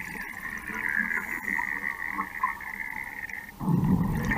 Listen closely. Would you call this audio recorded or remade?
recorded